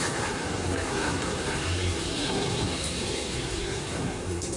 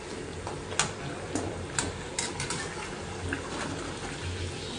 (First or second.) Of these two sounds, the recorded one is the second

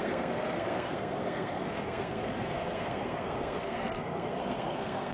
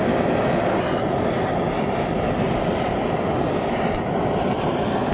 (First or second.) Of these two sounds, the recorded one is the second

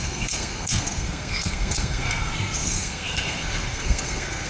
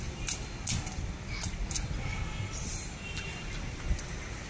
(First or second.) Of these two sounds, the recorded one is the second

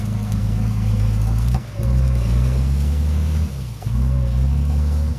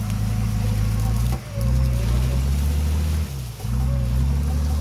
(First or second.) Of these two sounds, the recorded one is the second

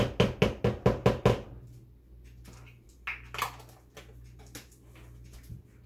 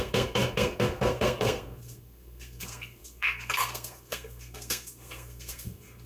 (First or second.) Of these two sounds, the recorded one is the first